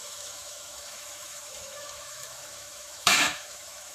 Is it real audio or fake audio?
fake